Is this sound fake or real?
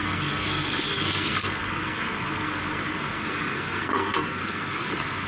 fake